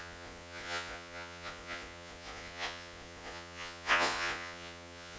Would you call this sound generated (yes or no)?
yes